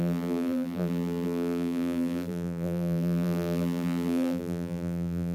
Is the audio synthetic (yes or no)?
yes